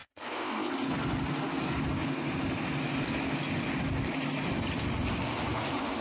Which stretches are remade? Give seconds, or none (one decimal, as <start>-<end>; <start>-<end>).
0.0-0.7